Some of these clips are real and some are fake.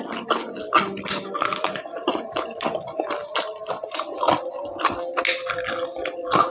real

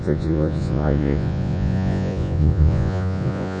fake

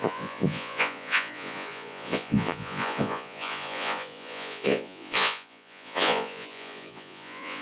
fake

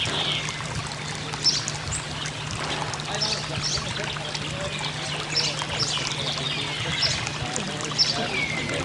real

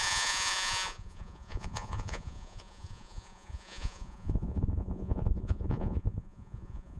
fake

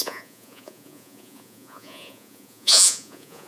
fake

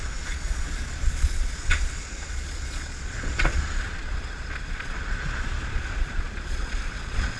fake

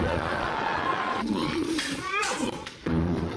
fake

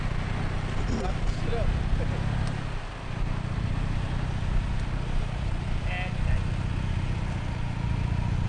real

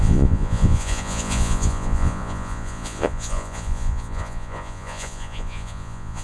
fake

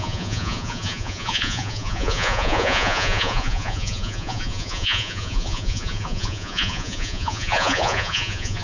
fake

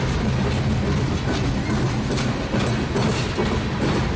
real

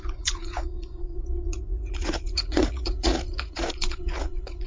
fake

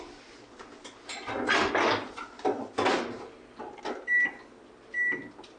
real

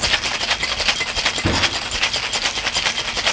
real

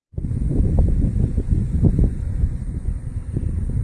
fake